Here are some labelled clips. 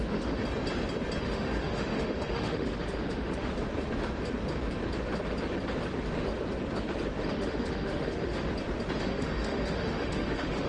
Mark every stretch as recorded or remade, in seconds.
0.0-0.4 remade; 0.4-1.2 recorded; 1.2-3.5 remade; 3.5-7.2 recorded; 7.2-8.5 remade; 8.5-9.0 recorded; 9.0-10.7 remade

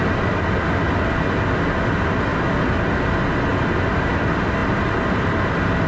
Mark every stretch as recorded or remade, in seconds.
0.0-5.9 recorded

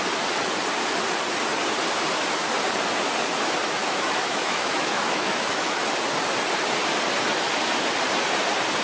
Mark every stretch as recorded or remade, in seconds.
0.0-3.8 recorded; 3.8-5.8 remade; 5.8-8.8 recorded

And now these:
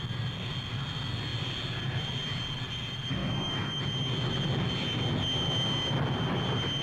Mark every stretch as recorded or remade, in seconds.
0.0-3.2 recorded; 3.2-3.8 remade; 3.8-6.8 recorded

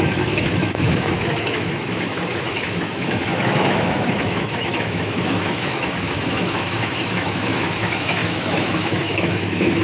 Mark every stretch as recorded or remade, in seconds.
0.0-9.8 remade

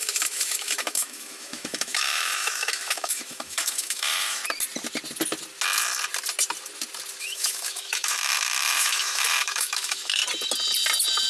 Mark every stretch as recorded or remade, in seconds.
0.0-4.4 remade; 4.4-7.2 recorded; 7.2-10.2 remade; 10.2-11.3 recorded